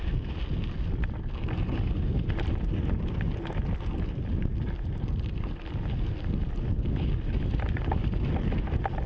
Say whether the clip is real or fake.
real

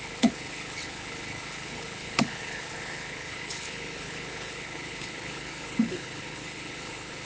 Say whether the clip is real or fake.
fake